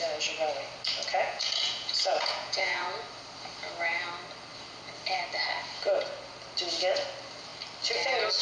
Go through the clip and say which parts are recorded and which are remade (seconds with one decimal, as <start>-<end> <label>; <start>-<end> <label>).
0.0-1.1 recorded; 1.1-2.9 remade; 2.9-8.4 recorded